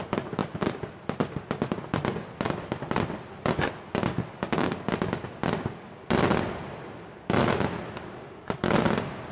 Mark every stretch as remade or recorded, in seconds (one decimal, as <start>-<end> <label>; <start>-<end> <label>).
0.0-9.3 recorded